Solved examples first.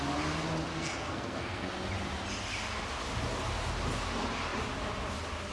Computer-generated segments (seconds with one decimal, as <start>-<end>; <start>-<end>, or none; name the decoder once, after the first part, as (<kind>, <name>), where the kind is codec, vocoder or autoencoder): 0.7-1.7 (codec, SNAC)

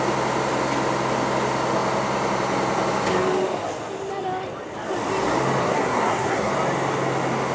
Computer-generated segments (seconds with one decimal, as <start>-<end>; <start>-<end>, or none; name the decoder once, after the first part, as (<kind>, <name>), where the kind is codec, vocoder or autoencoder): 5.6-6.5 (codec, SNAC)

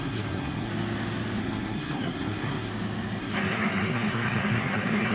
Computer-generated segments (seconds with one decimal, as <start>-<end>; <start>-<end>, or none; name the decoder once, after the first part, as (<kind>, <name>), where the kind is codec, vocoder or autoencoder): 0.0-0.7 (codec, SNAC); 1.4-2.7; 3.2-5.1

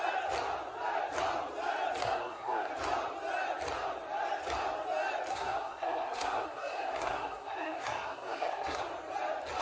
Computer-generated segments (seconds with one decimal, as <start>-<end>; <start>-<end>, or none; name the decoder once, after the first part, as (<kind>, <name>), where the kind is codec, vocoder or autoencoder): 2.0-2.7 (codec, SNAC); 5.3-8.8

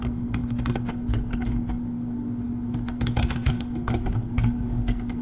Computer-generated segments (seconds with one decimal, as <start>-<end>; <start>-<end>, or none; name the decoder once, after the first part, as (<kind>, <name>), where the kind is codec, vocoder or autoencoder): 0.0-5.2 (codec, SNAC)

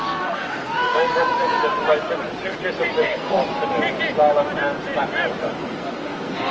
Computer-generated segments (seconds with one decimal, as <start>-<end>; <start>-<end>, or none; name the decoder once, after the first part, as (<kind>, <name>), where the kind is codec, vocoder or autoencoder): 0.0-1.1 (codec, SNAC); 3.0-3.4; 5.4-6.5

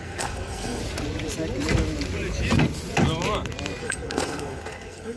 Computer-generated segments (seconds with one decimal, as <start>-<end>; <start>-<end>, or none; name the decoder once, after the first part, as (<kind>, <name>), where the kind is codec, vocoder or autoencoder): 0.0-0.8 (codec, SNAC); 3.8-5.2